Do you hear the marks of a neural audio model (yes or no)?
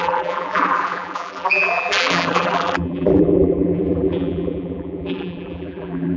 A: yes